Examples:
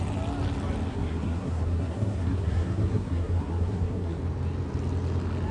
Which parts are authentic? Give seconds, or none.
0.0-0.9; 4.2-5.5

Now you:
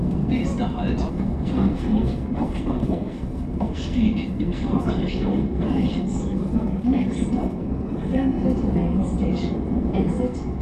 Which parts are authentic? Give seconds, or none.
0.4-1.1

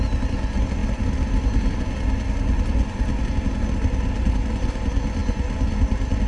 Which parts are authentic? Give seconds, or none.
0.0-6.3

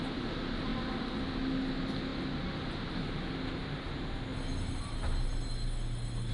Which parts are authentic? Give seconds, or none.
0.0-6.3

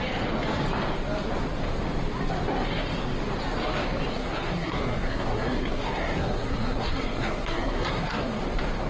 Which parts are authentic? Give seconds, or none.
0.0-4.1; 8.4-8.9

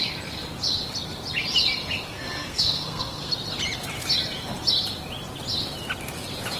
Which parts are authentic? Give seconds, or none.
0.0-2.1; 3.3-6.6

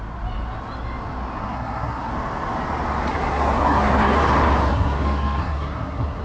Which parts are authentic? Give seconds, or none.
0.0-1.4; 2.1-3.1; 4.2-4.7

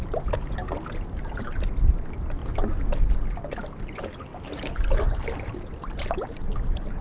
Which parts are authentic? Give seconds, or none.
0.0-7.0